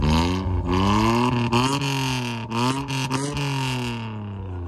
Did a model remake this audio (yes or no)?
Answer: no